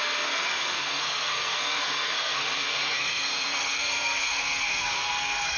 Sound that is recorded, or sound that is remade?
remade